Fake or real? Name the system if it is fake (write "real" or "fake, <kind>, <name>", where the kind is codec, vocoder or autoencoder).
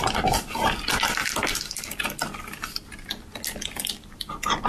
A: real